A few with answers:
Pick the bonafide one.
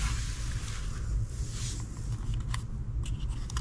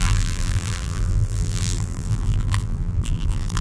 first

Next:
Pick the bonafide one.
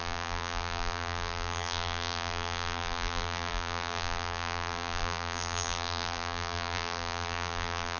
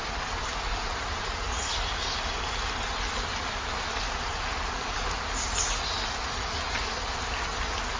second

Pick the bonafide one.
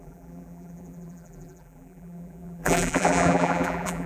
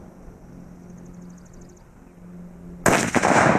second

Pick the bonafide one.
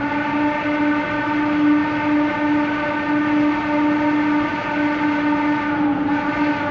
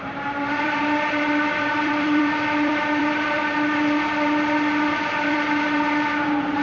first